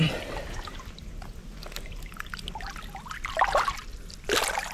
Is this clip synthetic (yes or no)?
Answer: no